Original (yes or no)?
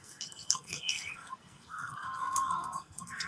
no